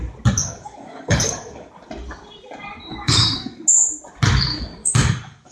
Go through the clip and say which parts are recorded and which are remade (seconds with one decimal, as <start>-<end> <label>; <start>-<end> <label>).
0.0-0.4 recorded; 0.4-1.7 remade; 1.7-2.9 recorded; 2.9-3.5 remade; 3.5-4.5 recorded; 4.5-5.5 remade